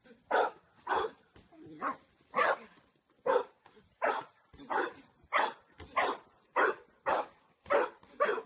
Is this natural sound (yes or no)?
yes